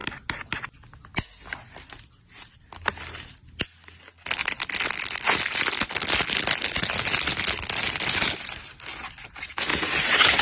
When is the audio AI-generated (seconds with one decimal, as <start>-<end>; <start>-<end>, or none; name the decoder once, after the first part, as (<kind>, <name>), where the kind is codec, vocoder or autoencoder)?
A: 9.7-10.4 (vocoder, BigVGAN v2)